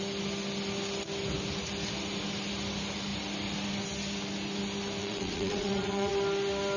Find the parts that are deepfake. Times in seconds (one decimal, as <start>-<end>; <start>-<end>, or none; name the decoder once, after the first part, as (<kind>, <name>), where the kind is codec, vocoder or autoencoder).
5.0-6.1 (vocoder, Vocos)